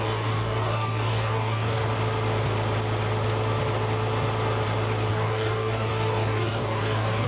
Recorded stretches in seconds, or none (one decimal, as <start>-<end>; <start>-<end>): 1.8-5.1